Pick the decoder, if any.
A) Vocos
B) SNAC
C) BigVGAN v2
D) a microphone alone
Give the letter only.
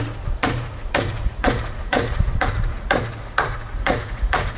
A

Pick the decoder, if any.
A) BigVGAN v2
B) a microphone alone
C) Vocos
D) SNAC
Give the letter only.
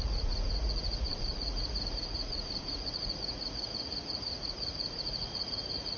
C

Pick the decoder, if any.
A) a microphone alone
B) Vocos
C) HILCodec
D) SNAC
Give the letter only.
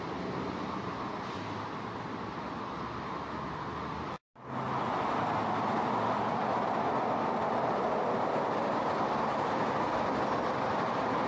A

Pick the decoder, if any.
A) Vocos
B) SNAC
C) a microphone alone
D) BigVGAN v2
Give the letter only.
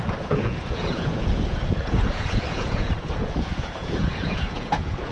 A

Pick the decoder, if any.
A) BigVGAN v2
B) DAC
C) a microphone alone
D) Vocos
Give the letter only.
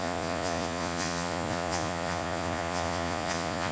D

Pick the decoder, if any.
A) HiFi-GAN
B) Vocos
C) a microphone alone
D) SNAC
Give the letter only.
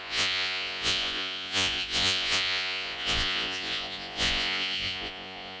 B